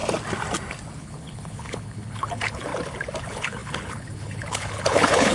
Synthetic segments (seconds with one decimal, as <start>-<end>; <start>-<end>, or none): 1.0-2.7; 3.2-5.3